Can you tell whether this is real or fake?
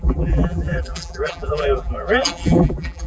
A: fake